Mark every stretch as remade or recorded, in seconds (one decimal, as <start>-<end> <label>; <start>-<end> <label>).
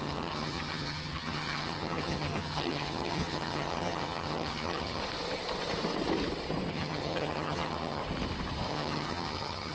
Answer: 0.0-5.0 remade; 5.0-6.7 recorded; 6.7-8.0 remade; 8.0-8.7 recorded; 8.7-9.7 remade